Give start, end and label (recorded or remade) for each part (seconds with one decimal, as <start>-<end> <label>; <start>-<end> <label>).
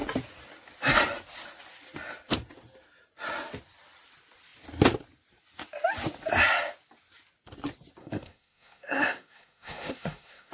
0.0-8.0 recorded; 8.0-10.5 remade